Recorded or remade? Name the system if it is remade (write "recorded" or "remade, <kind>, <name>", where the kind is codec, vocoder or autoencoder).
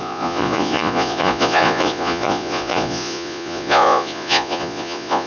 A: remade, vocoder, Vocos